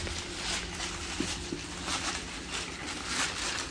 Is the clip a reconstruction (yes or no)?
no